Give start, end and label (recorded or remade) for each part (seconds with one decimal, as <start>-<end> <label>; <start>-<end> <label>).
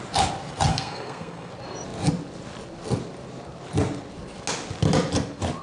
0.0-0.7 recorded; 0.7-1.5 remade; 1.5-5.6 recorded